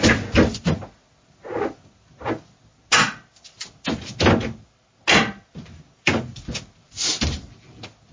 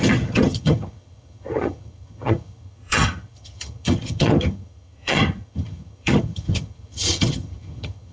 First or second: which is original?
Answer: first